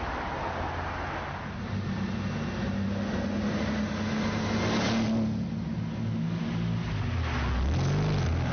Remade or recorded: recorded